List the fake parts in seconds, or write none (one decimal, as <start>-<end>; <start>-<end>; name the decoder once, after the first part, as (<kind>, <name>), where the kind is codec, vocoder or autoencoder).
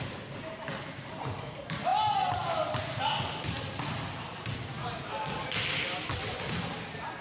none